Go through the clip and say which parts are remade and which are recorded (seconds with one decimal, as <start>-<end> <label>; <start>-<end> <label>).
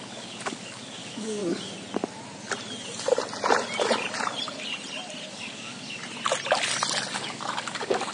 0.0-1.4 remade; 1.4-5.3 recorded; 5.3-6.0 remade; 6.0-7.2 recorded; 7.2-8.1 remade